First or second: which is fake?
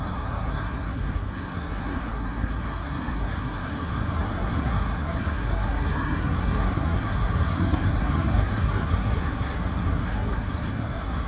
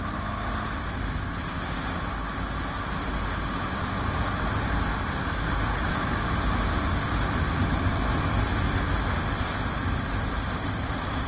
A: first